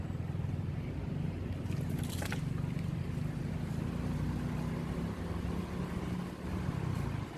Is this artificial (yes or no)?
no